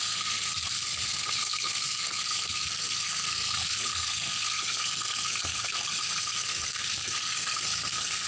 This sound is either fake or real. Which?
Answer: fake